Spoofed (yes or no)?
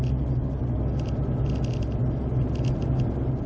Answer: no